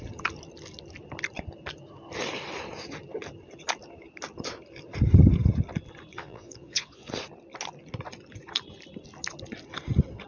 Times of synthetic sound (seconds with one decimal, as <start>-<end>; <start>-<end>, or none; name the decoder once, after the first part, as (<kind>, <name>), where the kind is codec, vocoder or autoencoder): 6.1-7.1 (vocoder, Vocos)